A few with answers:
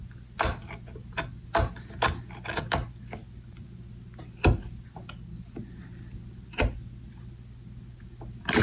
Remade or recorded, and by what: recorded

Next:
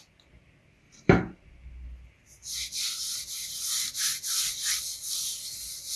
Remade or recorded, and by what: recorded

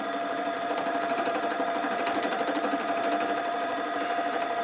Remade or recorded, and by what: remade, vocoder, BigVGAN v2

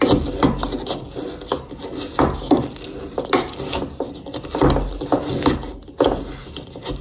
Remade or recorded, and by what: recorded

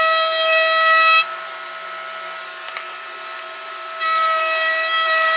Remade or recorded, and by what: recorded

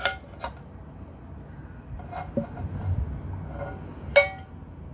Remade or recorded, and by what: recorded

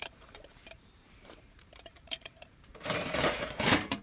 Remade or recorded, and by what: remade, vocoder, BigVGAN v2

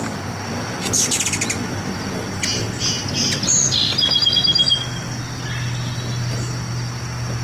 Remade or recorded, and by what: recorded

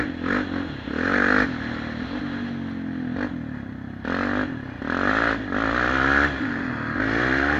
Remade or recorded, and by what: recorded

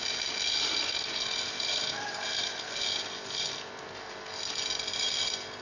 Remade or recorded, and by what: recorded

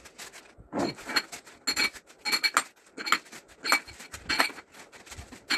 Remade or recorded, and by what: recorded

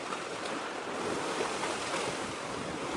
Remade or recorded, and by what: remade, vocoder, BigVGAN v2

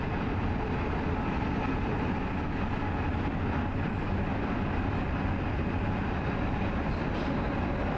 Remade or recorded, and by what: recorded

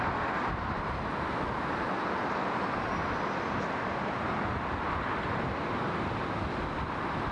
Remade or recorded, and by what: recorded